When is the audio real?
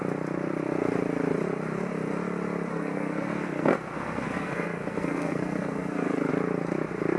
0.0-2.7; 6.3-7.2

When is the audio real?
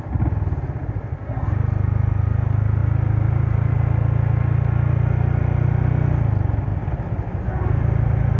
0.0-8.4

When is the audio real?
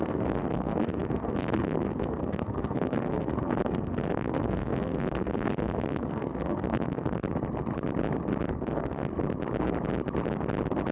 7.2-8.5; 9.1-10.9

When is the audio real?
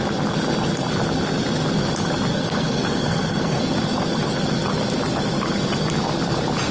0.0-2.3; 3.6-6.7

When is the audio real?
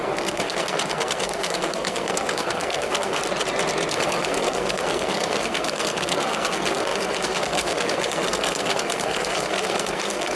3.2-3.9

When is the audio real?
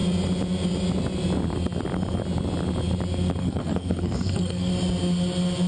0.0-3.4; 4.7-5.7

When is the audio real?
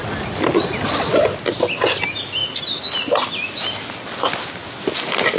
0.0-5.4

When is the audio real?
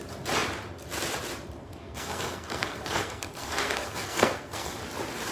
0.0-1.6; 4.8-5.3